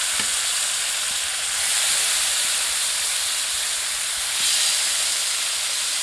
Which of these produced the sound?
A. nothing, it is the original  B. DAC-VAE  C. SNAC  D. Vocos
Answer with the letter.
A